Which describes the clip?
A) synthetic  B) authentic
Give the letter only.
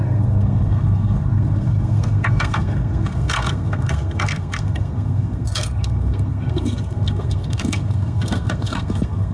A